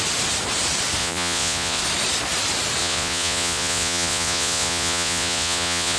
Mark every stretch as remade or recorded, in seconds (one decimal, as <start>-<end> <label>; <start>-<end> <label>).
0.0-1.0 recorded; 1.0-1.8 remade; 1.8-2.8 recorded; 2.8-6.0 remade